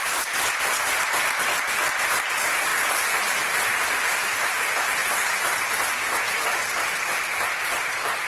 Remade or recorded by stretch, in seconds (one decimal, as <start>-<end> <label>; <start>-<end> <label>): 0.0-8.3 recorded